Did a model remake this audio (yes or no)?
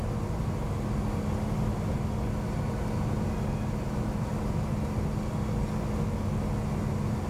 no